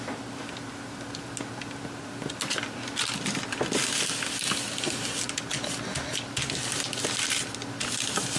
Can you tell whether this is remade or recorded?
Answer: recorded